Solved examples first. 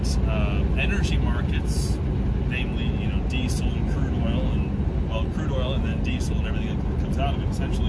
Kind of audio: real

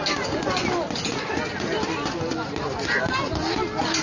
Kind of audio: real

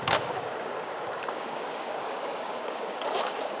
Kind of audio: fake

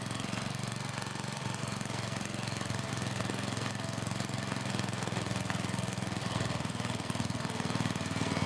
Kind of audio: fake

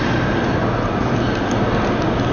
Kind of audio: real